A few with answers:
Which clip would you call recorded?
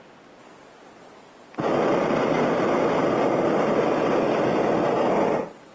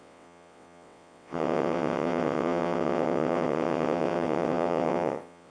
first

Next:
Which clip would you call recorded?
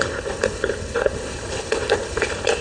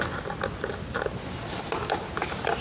second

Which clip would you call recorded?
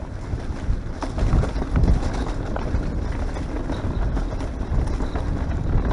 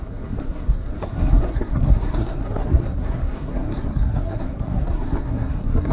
first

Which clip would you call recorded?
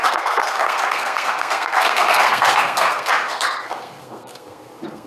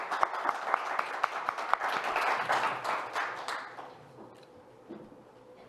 second